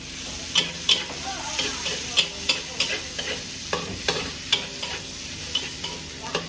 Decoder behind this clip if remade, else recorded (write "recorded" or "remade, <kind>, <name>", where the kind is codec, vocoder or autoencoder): recorded